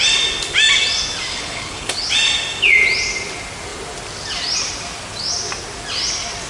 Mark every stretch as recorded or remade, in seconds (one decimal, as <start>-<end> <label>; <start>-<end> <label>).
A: 0.0-1.3 recorded; 1.3-2.1 remade; 2.1-6.5 recorded